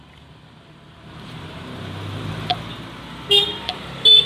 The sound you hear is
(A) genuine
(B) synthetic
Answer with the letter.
B